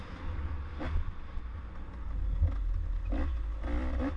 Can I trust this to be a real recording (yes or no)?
yes